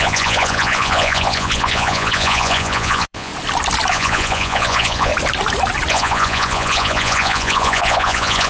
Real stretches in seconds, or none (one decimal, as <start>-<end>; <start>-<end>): 3.3-3.9; 5.1-5.9